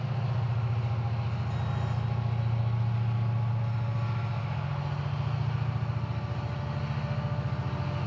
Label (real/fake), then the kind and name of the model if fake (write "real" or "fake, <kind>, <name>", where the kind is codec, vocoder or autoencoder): real